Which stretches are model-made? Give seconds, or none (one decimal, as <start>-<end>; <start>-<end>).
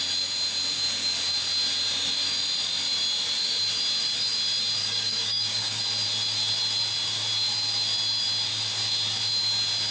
4.8-5.8